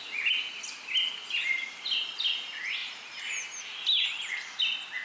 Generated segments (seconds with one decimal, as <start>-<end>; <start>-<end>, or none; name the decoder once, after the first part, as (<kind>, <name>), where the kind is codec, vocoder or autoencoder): none